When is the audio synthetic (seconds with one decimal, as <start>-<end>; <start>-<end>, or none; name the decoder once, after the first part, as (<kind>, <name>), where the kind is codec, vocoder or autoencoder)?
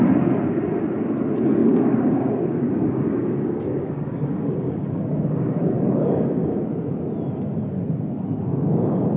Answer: 1.6-6.6 (codec, DAC); 8.5-9.2